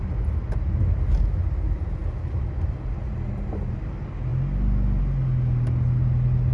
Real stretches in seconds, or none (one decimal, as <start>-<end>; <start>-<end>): 0.0-6.5